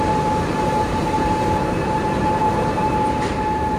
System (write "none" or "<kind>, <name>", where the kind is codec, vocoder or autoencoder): vocoder, BigVGAN v2